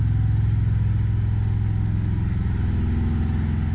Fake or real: real